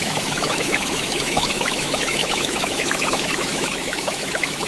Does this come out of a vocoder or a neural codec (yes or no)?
yes